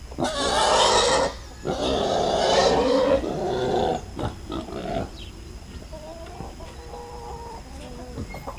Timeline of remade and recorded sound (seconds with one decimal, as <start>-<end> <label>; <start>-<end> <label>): 0.0-8.6 recorded